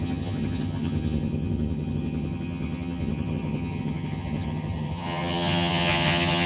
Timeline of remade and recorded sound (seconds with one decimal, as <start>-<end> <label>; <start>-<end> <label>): 0.0-6.5 remade